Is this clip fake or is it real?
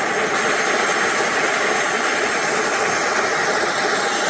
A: real